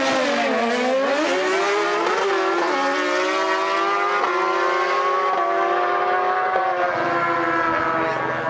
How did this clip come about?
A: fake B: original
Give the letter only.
B